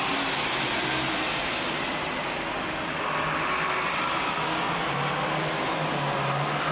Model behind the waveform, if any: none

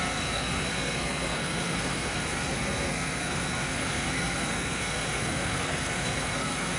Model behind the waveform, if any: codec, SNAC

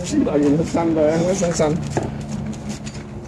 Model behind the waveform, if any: none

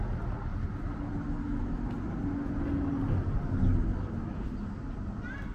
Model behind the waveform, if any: none